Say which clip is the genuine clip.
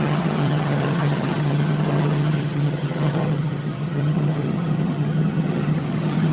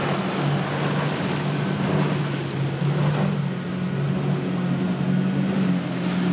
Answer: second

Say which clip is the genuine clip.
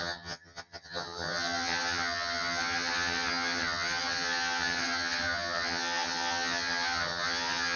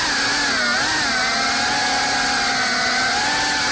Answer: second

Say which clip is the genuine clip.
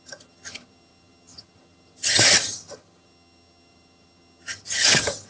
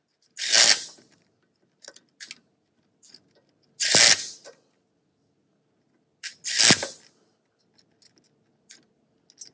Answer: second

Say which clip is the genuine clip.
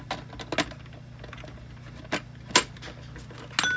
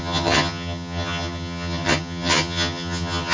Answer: first